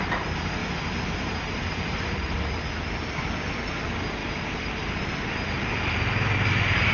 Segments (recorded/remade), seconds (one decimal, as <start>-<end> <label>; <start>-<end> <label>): 0.0-0.6 recorded; 0.6-3.6 remade; 3.6-4.2 recorded; 4.2-5.0 remade; 5.0-6.9 recorded